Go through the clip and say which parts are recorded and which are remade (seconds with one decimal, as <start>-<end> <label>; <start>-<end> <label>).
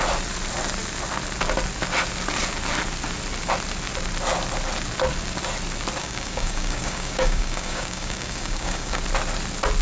0.0-6.0 recorded; 6.0-9.0 remade; 9.0-9.8 recorded